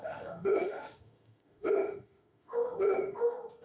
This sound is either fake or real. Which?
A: fake